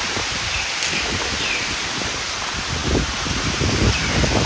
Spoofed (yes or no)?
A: no